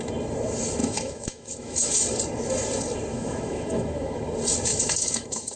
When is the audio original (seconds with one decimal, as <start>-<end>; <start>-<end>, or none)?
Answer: 0.0-0.8; 2.0-3.1; 4.3-4.7